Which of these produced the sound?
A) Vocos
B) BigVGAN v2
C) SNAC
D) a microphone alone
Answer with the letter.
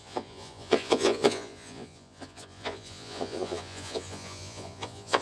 A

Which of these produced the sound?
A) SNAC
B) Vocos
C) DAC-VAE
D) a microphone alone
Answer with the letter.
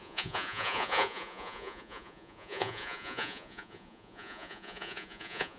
B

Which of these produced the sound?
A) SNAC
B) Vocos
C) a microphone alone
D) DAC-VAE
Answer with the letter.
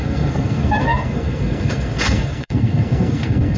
A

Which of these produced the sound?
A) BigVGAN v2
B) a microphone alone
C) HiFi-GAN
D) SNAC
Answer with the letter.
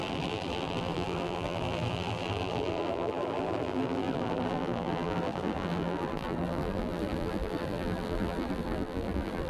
A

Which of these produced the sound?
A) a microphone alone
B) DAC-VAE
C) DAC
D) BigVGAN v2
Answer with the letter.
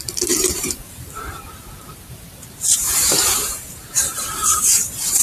D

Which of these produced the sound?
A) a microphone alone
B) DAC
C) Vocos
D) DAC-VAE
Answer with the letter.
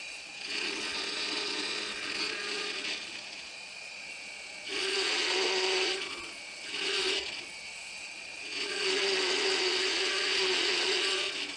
C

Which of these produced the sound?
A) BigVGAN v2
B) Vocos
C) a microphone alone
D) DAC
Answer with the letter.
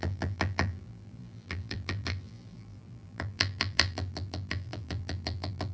A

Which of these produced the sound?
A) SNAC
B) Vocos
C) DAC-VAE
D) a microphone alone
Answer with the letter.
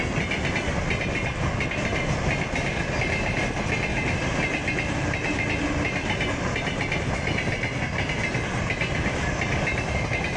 D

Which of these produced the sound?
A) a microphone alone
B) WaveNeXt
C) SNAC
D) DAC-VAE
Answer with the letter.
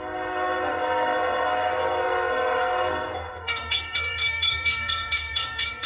C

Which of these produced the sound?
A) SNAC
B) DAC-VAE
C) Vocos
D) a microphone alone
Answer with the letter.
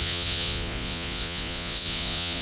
C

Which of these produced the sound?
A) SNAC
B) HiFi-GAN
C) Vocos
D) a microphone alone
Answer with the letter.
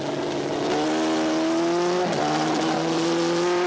D